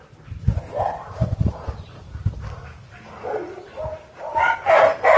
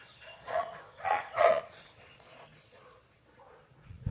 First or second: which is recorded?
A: first